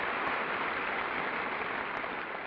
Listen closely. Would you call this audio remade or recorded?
recorded